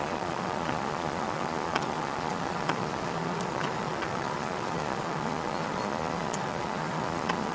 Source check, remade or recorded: remade